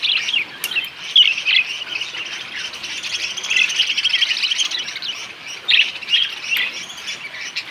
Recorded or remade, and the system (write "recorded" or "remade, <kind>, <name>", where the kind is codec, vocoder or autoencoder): recorded